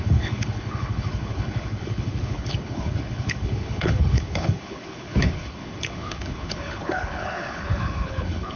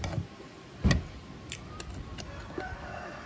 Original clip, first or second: second